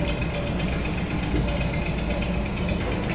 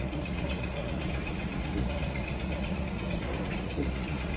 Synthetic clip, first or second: second